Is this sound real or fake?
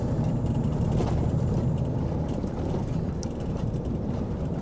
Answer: fake